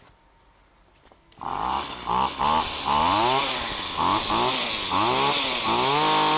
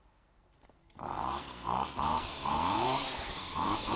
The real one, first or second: first